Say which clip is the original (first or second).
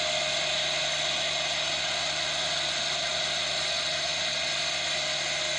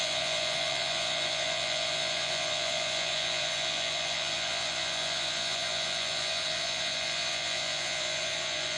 first